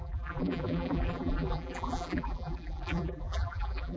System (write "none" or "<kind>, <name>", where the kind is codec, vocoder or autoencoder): vocoder, BigVGAN v2